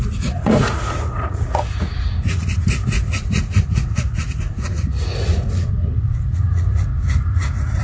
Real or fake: fake